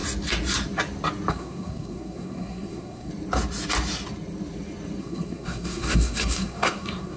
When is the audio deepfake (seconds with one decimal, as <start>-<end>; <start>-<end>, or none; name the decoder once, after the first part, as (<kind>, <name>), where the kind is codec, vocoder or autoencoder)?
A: 1.3-3.1 (codec, SNAC); 5.0-7.2